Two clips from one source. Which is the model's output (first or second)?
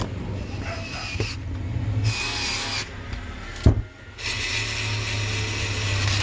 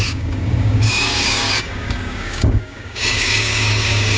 second